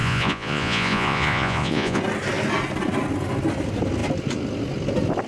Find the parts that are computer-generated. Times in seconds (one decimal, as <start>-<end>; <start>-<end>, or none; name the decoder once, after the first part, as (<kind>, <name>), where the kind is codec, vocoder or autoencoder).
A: 0.0-2.0 (vocoder, Vocos)